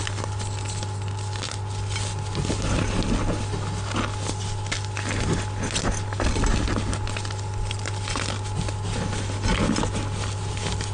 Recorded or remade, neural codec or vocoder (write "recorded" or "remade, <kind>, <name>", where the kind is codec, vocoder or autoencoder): recorded